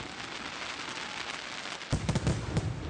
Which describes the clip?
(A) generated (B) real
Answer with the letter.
B